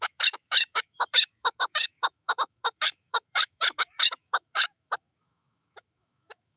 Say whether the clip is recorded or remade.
remade